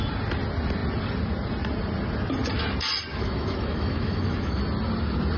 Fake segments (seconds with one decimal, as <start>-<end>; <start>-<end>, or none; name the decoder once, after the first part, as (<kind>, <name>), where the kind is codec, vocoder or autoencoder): 3.1-4.6 (autoencoder, DAC-VAE)